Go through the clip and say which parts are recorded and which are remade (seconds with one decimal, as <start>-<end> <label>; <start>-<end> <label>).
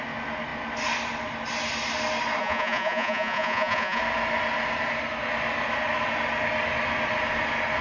0.0-2.4 recorded; 2.4-4.0 remade; 4.0-7.8 recorded